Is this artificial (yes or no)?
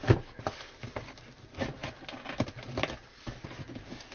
no